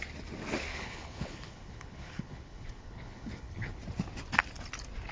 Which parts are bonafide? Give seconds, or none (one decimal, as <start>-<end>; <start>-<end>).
0.0-0.7; 3.8-5.1